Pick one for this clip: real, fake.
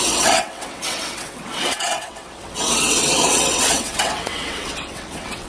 fake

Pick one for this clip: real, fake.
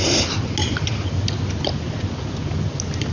real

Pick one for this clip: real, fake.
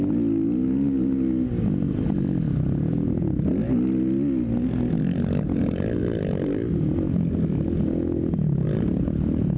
real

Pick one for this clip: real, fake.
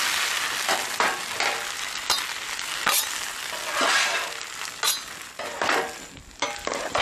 real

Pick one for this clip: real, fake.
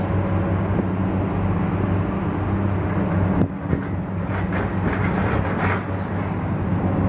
real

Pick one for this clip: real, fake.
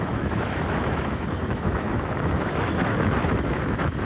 fake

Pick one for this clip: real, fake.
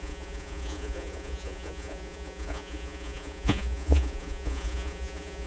fake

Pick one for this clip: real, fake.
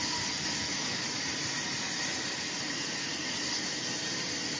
real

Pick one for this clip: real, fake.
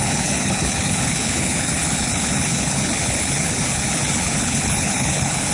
fake